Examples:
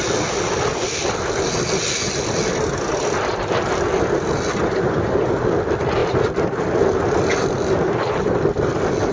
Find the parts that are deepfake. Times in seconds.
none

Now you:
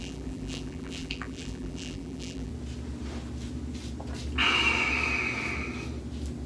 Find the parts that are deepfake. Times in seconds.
0.0-2.5 (vocoder, BigVGAN v2)

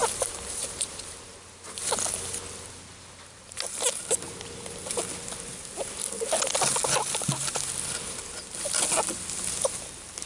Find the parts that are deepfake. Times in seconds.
0.0-1.3 (vocoder, BigVGAN v2)

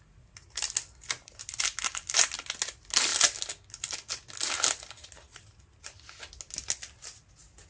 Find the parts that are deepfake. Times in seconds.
none

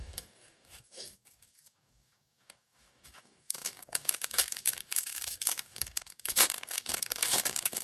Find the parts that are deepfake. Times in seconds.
0.0-7.8 (codec, DAC)

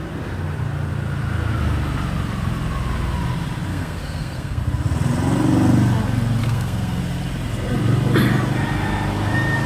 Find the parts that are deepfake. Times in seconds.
3.7-4.6 (codec, SNAC); 6.4-7.0

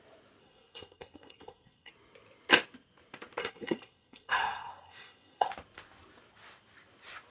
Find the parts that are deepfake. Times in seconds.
0.4-1.9 (codec, SNAC); 3.4-5.5

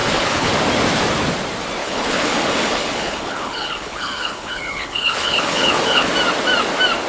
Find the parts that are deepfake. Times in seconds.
0.0-0.5 (codec, HILCodec); 1.8-6.1